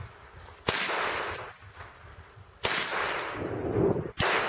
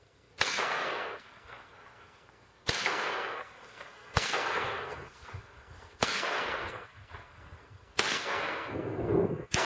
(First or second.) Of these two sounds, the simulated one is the second